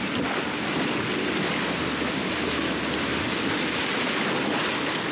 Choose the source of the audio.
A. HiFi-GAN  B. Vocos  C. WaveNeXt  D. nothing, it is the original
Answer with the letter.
D